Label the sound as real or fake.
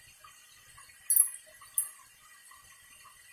real